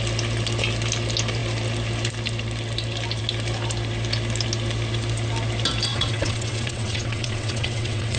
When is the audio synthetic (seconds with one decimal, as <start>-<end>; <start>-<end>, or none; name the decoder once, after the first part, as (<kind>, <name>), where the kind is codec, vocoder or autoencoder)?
5.9-8.2 (vocoder, WaveNeXt)